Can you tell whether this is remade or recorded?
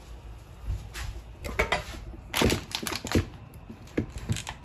recorded